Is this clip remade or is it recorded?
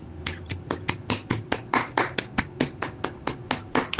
recorded